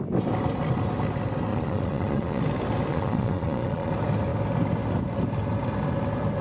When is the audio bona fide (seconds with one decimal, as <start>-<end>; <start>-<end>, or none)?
0.0-1.5; 2.4-2.9; 3.9-6.4